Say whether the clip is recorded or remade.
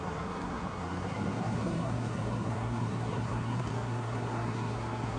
remade